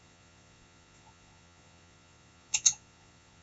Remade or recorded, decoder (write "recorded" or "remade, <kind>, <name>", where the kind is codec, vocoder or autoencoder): remade, vocoder, Vocos